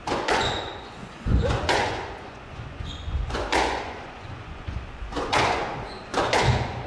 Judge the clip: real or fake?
fake